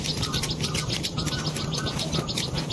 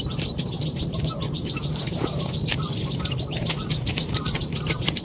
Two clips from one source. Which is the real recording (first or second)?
first